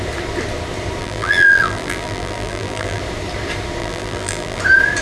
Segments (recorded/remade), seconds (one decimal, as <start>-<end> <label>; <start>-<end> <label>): 0.0-1.0 recorded; 1.0-3.0 remade; 3.0-3.8 recorded; 3.8-4.6 remade; 4.6-5.0 recorded